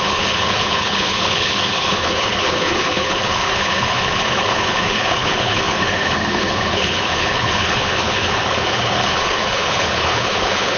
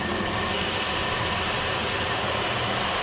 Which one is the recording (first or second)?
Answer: second